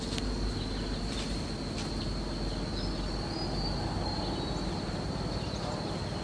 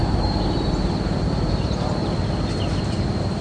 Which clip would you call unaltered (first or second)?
first